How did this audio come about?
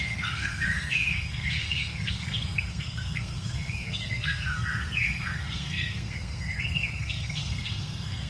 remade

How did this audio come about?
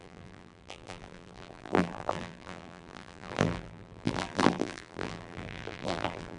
remade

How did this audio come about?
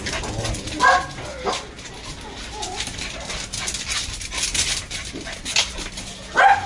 recorded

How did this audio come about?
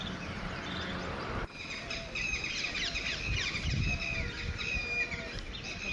recorded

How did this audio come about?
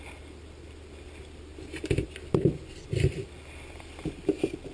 recorded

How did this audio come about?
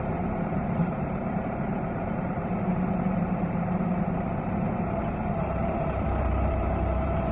remade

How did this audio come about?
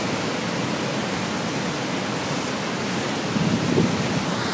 recorded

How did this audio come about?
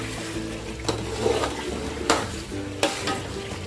recorded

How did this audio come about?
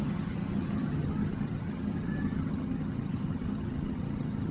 remade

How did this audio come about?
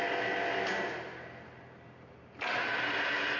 recorded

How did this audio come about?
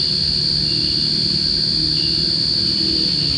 recorded